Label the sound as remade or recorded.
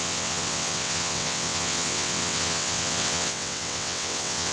remade